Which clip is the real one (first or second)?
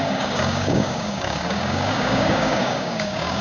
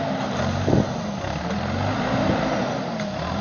second